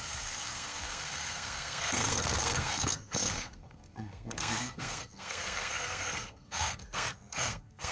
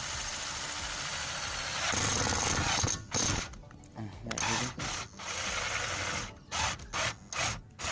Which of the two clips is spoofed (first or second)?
first